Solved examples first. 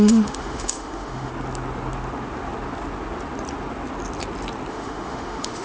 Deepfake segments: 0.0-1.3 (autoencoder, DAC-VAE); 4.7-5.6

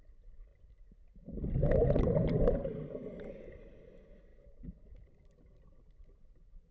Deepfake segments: none

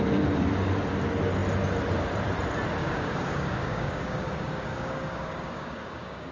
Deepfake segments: 2.8-6.3 (codec, DAC)

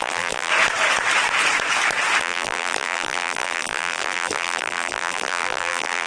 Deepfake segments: 0.0-0.5 (vocoder, BigVGAN v2); 2.2-6.1

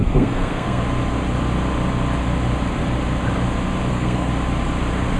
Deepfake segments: 0.0-0.8 (codec, SNAC); 3.9-4.3

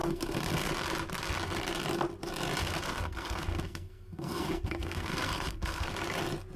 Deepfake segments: 0.0-0.7 (codec, SNAC); 2.6-5.9

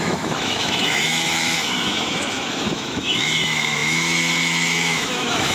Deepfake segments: 0.0-5.5 (autoencoder, DAC-VAE)

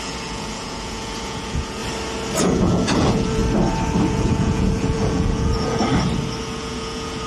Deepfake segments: 0.0-1.8 (vocoder, Vocos); 2.4-3.4; 4.1-5.8; 6.4-7.3